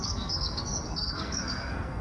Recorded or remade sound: remade